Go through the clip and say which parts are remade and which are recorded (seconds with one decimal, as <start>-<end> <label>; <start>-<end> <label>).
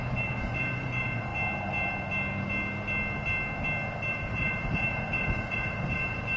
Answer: 0.0-1.3 remade; 1.3-4.1 recorded; 4.1-6.4 remade